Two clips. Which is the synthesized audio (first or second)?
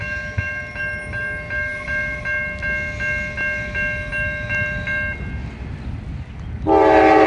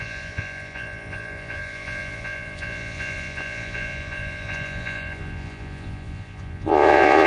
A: second